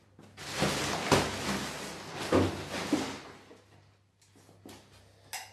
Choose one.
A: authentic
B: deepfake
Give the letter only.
A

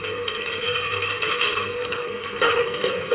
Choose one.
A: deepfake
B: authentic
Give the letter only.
A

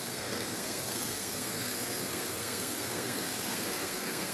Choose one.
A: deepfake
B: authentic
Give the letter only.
A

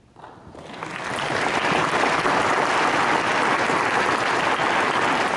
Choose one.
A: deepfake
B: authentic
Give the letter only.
B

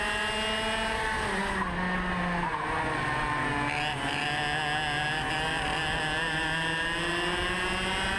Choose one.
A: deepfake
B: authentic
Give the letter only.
B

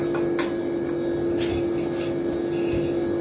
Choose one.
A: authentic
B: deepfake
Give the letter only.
A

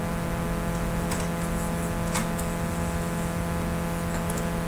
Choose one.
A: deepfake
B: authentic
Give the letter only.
B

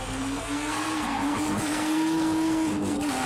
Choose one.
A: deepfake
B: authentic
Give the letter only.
A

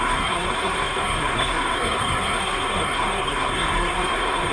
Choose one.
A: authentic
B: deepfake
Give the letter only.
B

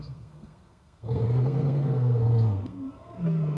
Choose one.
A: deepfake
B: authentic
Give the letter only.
A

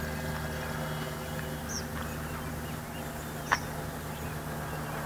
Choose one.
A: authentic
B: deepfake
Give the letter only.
A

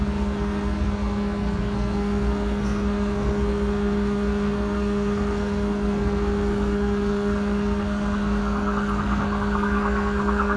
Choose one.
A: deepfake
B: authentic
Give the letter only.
A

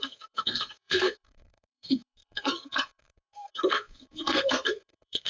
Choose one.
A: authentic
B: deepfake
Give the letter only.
B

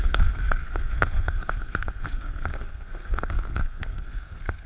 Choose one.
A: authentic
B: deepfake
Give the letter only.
B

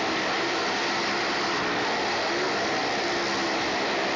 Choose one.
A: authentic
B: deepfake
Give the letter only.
A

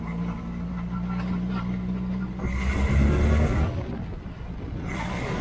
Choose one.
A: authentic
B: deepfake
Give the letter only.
A